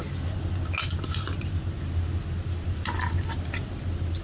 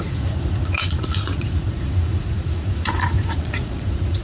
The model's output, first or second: second